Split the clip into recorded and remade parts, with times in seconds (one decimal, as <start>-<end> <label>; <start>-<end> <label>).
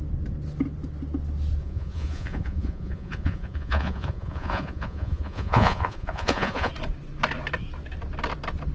0.0-1.6 recorded; 1.6-6.7 remade; 6.7-8.7 recorded